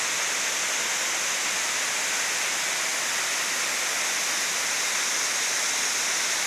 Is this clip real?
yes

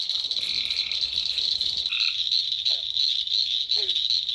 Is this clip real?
yes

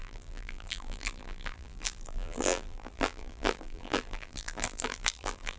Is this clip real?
no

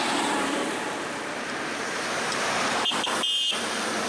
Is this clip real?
no